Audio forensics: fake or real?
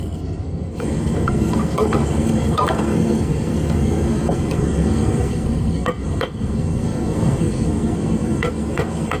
fake